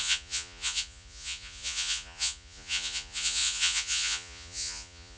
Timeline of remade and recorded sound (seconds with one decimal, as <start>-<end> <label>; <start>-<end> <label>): 0.0-5.2 remade